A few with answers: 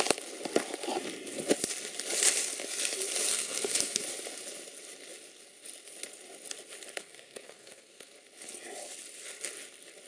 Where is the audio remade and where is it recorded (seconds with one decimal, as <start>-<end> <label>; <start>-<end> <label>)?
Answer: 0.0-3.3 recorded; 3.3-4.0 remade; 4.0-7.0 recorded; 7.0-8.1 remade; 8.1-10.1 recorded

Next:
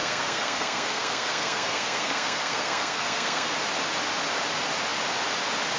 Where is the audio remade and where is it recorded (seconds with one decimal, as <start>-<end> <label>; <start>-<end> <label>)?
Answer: 0.0-3.5 remade; 3.5-5.8 recorded

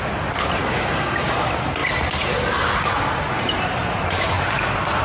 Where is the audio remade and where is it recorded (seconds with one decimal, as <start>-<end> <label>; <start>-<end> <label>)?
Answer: 0.0-5.0 recorded

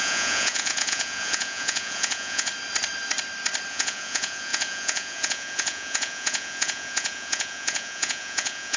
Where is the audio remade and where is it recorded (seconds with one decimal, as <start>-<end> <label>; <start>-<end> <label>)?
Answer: 0.0-2.5 remade; 2.5-3.7 recorded; 3.7-8.8 remade

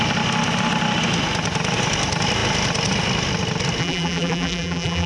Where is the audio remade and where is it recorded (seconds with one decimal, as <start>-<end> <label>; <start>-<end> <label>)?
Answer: 0.0-3.8 recorded; 3.8-5.1 remade

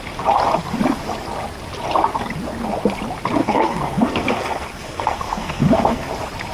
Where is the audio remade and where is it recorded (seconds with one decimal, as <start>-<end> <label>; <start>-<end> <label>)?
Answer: 0.0-3.4 recorded; 3.4-6.1 remade; 6.1-6.5 recorded

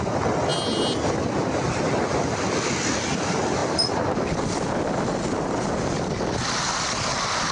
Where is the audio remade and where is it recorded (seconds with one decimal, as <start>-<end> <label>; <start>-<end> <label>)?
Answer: 0.0-7.5 recorded